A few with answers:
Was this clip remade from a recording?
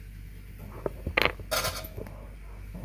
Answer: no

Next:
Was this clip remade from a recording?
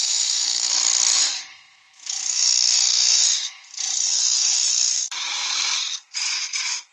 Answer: yes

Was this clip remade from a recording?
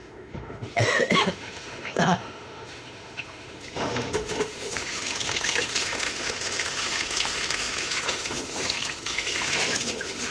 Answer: yes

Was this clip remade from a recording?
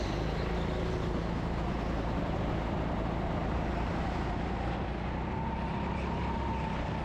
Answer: no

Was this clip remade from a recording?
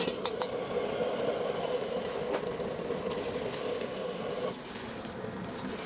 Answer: no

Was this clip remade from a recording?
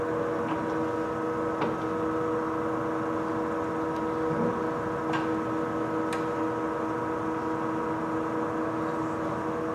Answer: no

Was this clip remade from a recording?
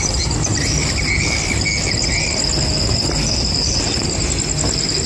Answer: no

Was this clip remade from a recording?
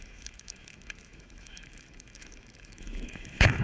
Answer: yes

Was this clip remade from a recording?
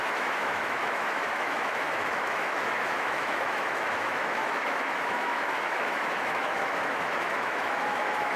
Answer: yes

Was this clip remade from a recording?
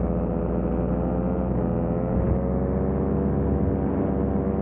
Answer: no